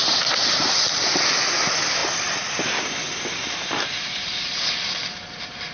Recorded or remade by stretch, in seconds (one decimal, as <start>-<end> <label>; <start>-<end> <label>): 0.0-5.7 recorded